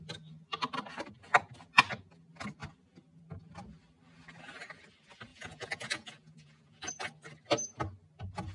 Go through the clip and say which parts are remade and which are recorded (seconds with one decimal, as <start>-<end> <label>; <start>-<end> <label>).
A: 0.0-5.3 recorded; 5.3-6.9 remade; 6.9-8.5 recorded